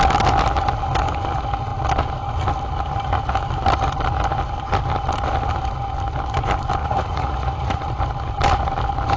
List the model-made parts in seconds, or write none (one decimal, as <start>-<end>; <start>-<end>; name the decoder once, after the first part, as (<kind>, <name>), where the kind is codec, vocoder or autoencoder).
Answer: 6.8-7.8 (vocoder, Vocos)